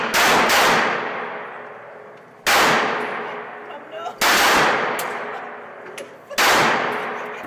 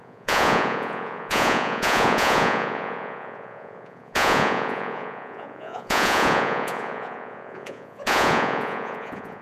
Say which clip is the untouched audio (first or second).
first